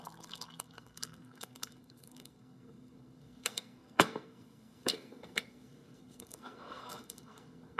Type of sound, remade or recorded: remade